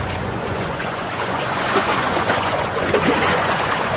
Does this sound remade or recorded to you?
remade